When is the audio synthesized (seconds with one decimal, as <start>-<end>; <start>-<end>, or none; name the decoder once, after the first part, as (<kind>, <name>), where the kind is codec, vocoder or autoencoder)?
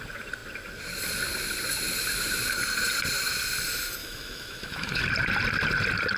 4.0-5.0 (autoencoder, DAC-VAE)